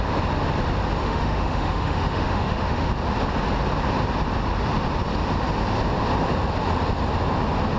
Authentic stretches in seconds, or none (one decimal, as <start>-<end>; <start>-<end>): 0.0-1.0; 2.9-7.8